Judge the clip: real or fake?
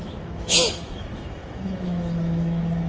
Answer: fake